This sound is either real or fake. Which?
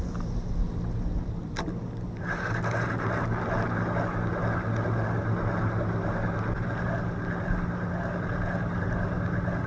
real